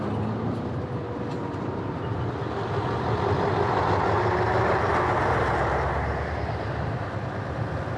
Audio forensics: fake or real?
real